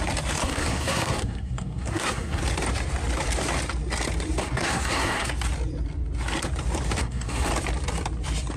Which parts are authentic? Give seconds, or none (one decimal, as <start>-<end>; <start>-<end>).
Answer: 0.0-0.4; 2.4-4.4; 5.3-7.0; 7.5-8.6